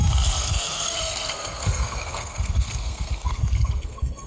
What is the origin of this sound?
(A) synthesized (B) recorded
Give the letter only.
A